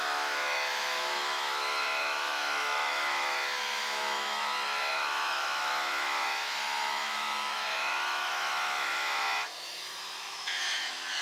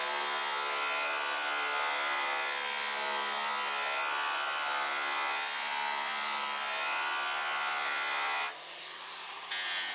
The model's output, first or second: first